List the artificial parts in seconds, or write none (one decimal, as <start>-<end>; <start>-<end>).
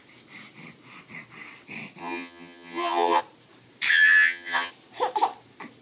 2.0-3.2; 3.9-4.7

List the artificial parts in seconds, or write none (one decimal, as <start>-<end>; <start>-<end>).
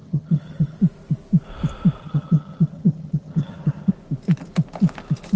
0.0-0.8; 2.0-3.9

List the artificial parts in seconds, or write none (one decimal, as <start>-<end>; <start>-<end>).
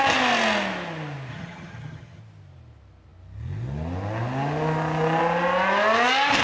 1.3-2.2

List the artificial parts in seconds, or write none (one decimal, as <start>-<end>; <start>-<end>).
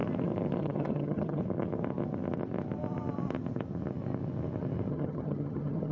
0.6-1.4; 4.9-5.9